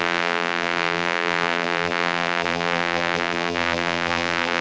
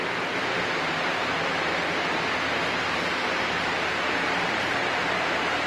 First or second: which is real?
second